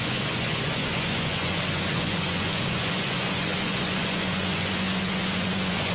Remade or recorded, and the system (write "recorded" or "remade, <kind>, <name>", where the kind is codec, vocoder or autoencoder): remade, vocoder, Vocos